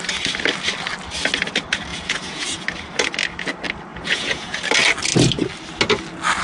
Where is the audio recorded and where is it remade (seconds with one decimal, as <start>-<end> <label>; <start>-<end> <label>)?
0.0-1.9 recorded; 1.9-2.6 remade; 2.6-3.9 recorded; 3.9-4.6 remade; 4.6-6.4 recorded